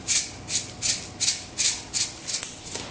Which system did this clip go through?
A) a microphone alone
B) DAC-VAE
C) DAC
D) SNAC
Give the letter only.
A